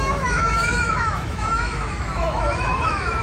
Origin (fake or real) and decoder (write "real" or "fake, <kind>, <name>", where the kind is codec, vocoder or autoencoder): fake, autoencoder, DAC-VAE